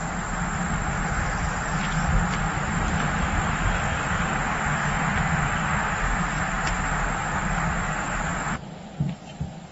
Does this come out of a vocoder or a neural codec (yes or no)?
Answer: no